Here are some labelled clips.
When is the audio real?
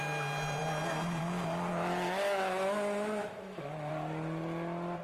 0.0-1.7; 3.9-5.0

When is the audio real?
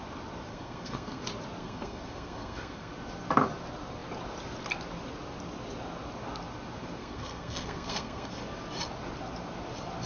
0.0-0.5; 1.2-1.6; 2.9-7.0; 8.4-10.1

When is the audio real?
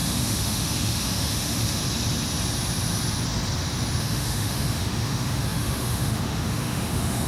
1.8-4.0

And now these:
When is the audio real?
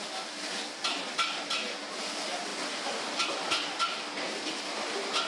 0.0-5.3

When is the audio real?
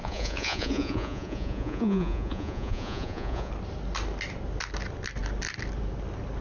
3.5-6.4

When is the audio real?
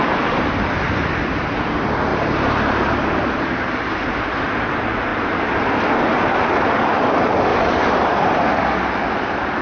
0.0-2.1; 3.8-5.1; 5.7-7.5; 8.4-9.6